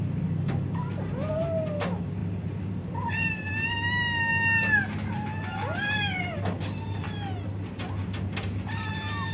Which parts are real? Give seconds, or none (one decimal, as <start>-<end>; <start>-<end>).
0.0-9.3